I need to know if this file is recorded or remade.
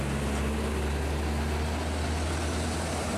recorded